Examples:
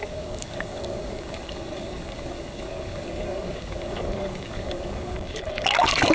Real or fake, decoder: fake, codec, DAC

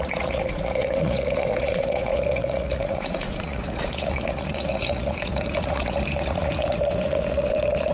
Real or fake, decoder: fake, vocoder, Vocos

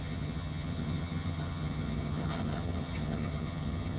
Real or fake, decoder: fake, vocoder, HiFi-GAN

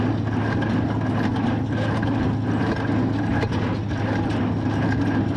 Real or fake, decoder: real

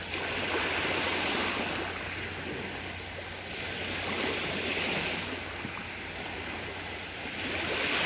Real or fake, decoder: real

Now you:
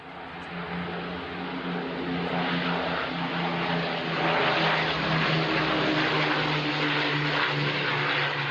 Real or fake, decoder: real